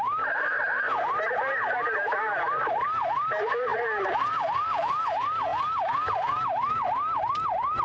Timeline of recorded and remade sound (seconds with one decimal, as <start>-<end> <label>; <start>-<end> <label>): 0.0-3.7 recorded; 3.7-5.0 remade; 5.0-7.8 recorded